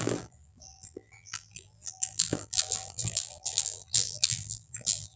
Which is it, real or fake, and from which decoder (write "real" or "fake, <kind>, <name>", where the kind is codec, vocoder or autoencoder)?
fake, vocoder, BigVGAN v2